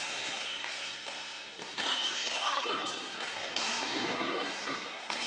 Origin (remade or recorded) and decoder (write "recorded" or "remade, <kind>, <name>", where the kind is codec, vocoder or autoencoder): remade, codec, SNAC